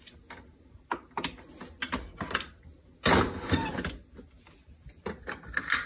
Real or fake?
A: real